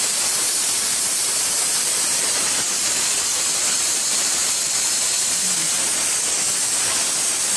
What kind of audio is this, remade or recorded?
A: remade